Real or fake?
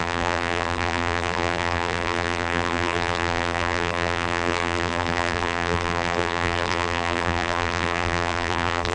fake